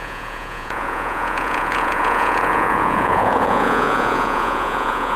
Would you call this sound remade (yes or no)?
yes